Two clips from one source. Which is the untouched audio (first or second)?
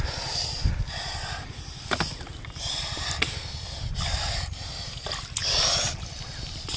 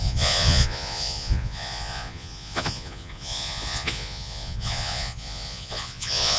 first